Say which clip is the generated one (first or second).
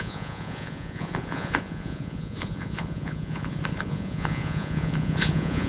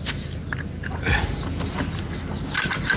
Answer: first